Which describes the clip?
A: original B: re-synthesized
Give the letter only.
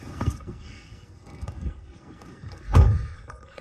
B